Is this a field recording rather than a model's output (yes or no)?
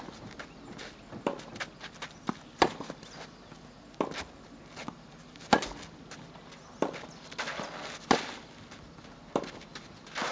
yes